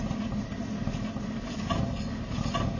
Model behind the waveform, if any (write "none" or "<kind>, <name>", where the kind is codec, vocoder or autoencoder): none